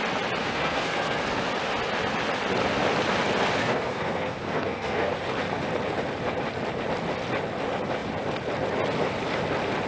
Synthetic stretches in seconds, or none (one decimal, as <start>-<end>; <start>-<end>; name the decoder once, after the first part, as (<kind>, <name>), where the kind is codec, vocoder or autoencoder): 0.4-1.2 (codec, SNAC); 3.6-5.1